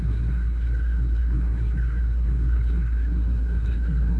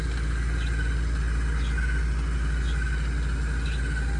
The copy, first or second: first